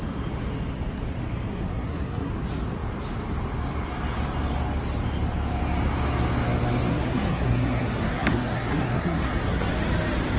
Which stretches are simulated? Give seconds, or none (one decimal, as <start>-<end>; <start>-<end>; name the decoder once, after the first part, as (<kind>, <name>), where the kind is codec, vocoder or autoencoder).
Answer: 1.5-2.3 (codec, SNAC); 6.9-9.7